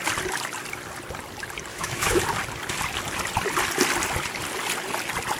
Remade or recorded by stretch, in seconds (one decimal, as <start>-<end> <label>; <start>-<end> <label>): 0.0-1.7 recorded; 1.7-2.2 remade; 2.2-5.4 recorded